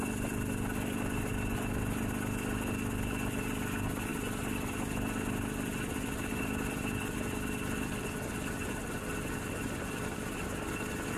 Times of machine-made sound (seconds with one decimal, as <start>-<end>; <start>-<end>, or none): none

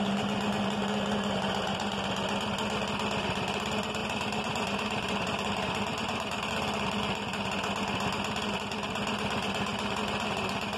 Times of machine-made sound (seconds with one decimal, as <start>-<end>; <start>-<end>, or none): 4.0-6.5